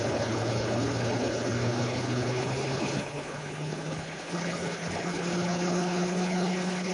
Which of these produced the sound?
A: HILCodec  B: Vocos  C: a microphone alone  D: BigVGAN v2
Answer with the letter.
A